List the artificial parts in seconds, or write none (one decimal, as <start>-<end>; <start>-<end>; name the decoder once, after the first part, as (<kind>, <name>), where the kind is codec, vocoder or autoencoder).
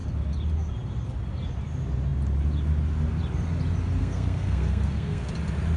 4.0-5.3 (codec, SNAC)